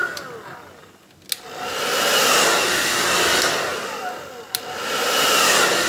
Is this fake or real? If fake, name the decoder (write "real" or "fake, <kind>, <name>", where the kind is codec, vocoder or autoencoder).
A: real